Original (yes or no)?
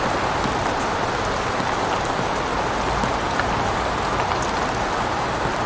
yes